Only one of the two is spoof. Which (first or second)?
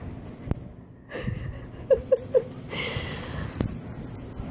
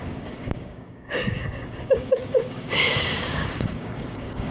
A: second